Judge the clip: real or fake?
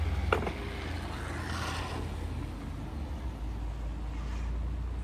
real